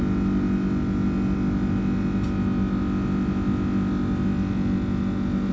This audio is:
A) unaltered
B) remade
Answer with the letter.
A